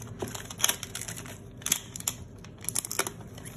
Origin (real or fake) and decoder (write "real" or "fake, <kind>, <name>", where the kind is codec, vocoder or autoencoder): real